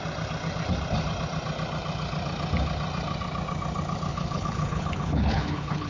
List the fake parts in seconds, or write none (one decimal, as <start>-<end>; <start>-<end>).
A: 4.1-5.9

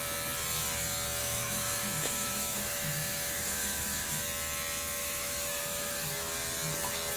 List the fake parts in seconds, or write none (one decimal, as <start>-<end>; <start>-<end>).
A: 1.2-4.1; 5.0-6.1

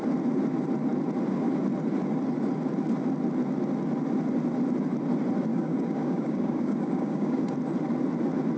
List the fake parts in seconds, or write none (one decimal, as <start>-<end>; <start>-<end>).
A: 5.5-7.4

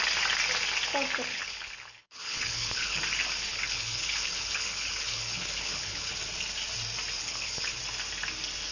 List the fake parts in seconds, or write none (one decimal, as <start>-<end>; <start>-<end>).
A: 1.3-3.0; 3.5-6.1; 7.2-7.8

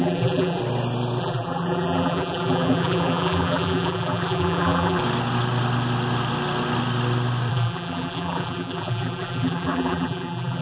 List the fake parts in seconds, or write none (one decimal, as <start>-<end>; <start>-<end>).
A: 0.0-0.6; 1.2-5.0; 7.5-10.6

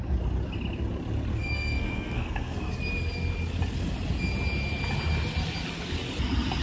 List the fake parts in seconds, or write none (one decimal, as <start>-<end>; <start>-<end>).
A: 1.3-2.7

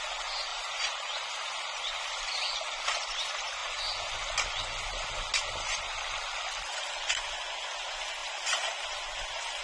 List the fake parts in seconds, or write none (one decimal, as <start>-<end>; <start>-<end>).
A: 0.5-2.2

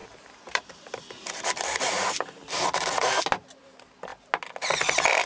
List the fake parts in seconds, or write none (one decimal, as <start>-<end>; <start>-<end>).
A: 0.0-2.0; 3.5-4.1